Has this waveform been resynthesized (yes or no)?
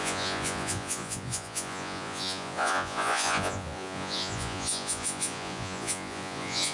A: yes